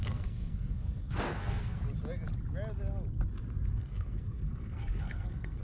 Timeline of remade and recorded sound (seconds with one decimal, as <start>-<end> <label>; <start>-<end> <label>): 0.0-1.8 remade; 1.8-3.7 recorded; 3.7-5.6 remade